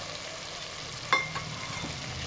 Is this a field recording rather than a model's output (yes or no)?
yes